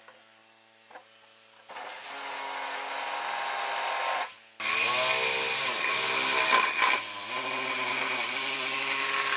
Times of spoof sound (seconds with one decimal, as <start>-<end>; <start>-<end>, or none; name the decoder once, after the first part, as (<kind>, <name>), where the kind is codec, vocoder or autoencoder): none